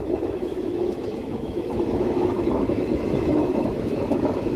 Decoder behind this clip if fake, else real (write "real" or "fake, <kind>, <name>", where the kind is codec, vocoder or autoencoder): fake, autoencoder, DAC-VAE